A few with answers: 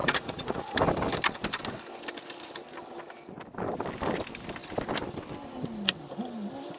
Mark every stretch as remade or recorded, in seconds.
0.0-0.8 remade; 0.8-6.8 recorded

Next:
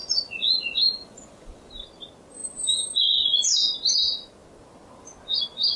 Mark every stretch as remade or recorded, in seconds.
0.0-1.7 remade; 1.7-5.8 recorded

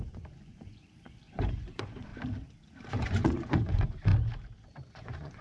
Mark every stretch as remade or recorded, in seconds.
0.0-2.1 remade; 2.1-2.9 recorded; 2.9-4.1 remade; 4.1-4.8 recorded; 4.8-5.4 remade

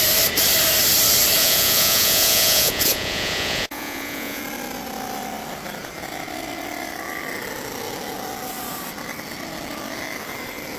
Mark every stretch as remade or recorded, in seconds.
0.0-1.4 recorded; 1.4-4.4 remade; 4.4-10.8 recorded

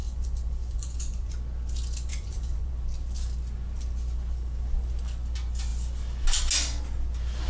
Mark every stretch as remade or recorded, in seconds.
0.0-1.3 remade; 1.3-2.1 recorded; 2.1-2.7 remade; 2.7-7.5 recorded

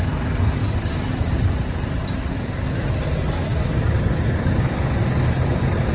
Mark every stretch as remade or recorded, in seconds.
0.0-5.9 recorded

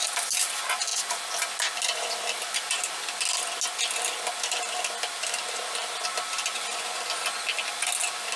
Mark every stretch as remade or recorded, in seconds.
0.0-6.5 recorded; 6.5-7.0 remade; 7.0-8.4 recorded